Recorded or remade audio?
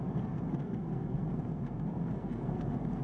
remade